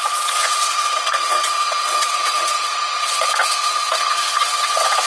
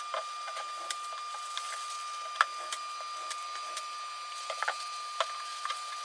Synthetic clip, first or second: first